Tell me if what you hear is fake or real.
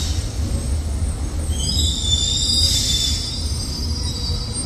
real